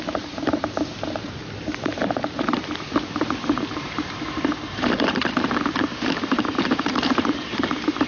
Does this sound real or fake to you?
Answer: fake